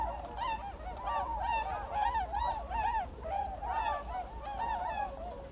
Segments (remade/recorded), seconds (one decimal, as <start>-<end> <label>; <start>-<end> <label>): 0.0-5.5 recorded